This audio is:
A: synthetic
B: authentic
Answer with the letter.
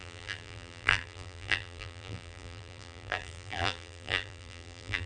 A